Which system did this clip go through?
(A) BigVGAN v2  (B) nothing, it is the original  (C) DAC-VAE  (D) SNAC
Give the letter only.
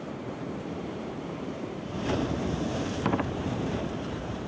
A